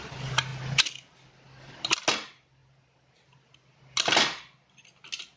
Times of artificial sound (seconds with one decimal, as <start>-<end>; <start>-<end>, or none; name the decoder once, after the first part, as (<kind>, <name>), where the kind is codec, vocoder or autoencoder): none